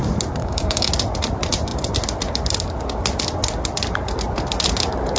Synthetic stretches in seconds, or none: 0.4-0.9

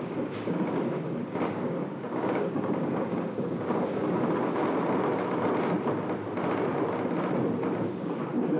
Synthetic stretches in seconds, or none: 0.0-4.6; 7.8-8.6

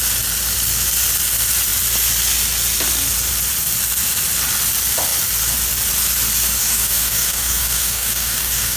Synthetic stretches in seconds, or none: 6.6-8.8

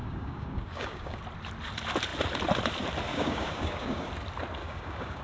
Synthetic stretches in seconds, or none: 0.0-1.2; 3.1-4.1; 4.6-5.2

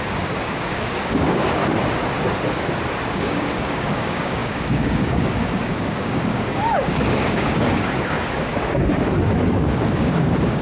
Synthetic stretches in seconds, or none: 0.0-1.6; 3.1-8.5; 9.5-10.6

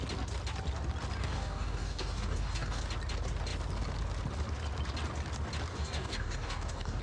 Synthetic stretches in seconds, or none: 1.2-2.8; 5.7-7.0

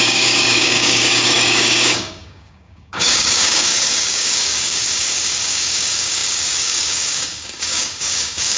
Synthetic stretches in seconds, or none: 0.0-8.6

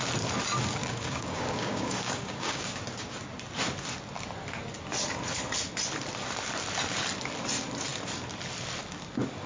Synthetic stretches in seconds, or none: 0.8-2.7